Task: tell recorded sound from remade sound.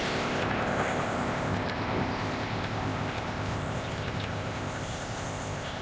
remade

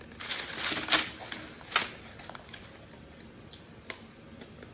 recorded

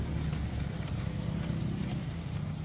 recorded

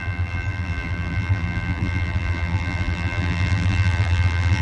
remade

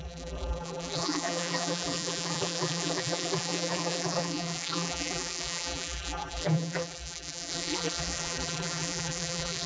remade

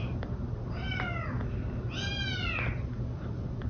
recorded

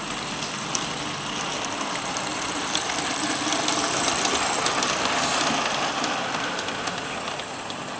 recorded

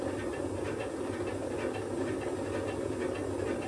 recorded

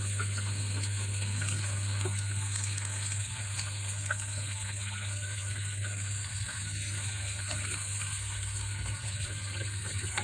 remade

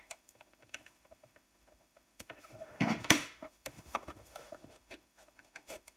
remade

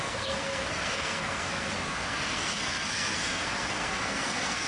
remade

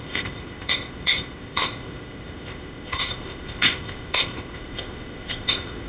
remade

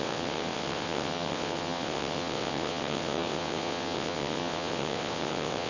remade